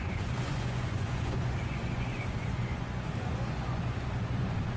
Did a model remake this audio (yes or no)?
yes